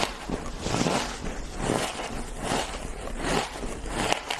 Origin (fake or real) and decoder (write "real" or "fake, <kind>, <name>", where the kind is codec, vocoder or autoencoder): real